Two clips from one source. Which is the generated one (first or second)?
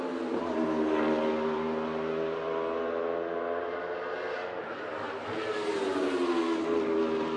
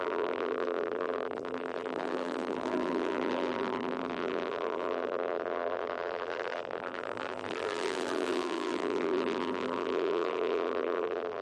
second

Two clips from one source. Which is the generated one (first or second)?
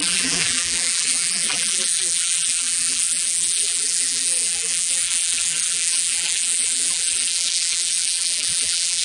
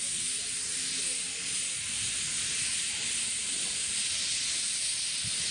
first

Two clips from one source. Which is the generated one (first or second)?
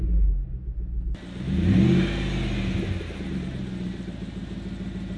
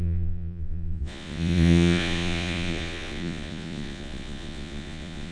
second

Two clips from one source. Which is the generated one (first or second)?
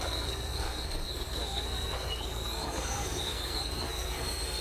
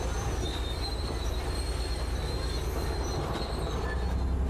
first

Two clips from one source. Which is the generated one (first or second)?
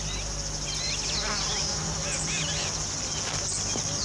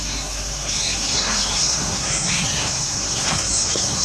second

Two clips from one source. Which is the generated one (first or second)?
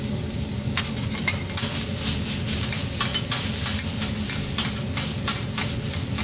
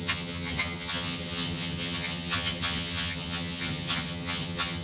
second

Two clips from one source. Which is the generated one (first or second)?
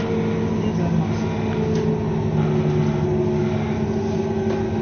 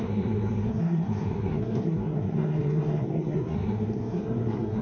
second